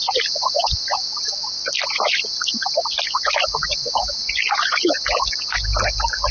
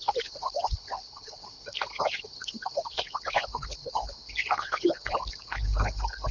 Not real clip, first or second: second